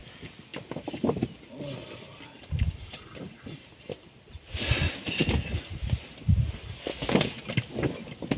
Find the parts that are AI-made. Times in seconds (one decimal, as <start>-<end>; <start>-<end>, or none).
none